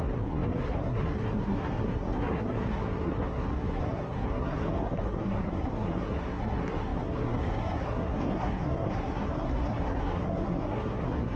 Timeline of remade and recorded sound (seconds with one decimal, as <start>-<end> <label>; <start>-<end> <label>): 0.0-11.4 remade

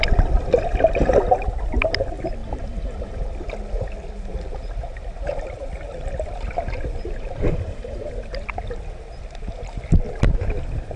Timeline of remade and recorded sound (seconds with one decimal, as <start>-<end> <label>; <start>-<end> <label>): 0.0-2.4 recorded; 2.4-3.2 remade; 3.2-7.4 recorded; 7.4-8.1 remade; 8.1-11.0 recorded

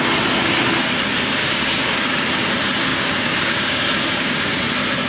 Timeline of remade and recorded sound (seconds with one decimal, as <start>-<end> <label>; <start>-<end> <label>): 0.0-1.4 recorded; 1.4-2.5 remade; 2.5-2.9 recorded; 2.9-4.6 remade; 4.6-5.1 recorded

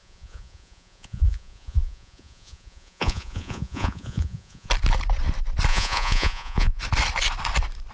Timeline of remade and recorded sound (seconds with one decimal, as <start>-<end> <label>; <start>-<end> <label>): 0.0-4.7 remade; 4.7-5.7 recorded; 5.7-6.8 remade; 6.8-7.9 recorded

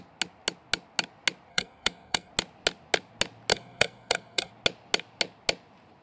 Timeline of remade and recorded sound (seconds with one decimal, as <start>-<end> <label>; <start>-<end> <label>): 0.0-1.5 recorded; 1.5-2.3 remade; 2.3-3.5 recorded; 3.5-4.5 remade; 4.5-6.0 recorded

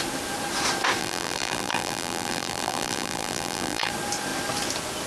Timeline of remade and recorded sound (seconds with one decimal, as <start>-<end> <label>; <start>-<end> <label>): 0.0-1.0 recorded; 1.0-3.9 remade; 3.9-5.1 recorded

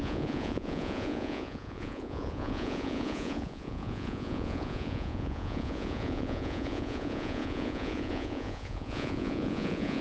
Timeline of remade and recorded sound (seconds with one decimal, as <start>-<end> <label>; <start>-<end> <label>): 0.0-10.0 remade